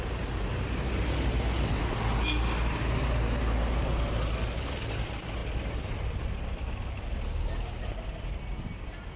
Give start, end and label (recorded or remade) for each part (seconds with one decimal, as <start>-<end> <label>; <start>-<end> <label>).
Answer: 0.0-9.2 recorded